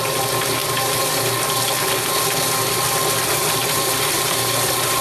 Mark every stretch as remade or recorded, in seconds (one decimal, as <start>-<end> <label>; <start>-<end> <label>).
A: 0.0-5.0 recorded